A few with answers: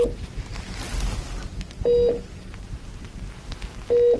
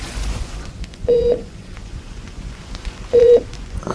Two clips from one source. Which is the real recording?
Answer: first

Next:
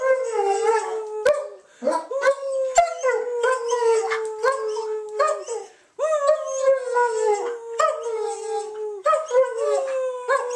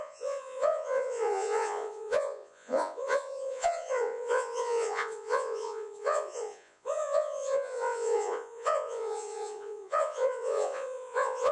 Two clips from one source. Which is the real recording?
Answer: first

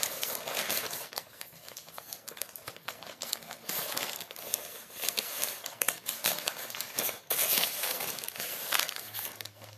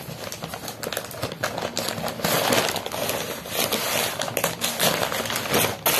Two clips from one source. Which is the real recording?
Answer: second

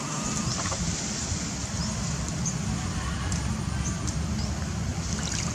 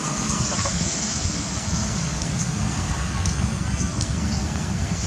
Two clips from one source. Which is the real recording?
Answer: first